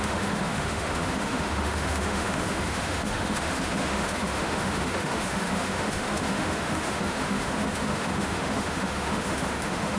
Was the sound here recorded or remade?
remade